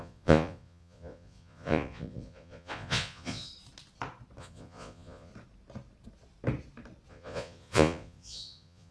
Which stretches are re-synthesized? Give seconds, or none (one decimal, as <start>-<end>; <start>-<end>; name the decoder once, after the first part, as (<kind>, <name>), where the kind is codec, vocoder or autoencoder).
0.0-3.5 (vocoder, Vocos); 4.4-5.3; 7.1-8.9